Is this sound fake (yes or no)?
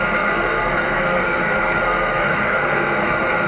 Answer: yes